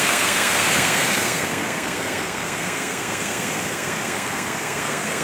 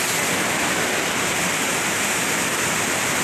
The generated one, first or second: first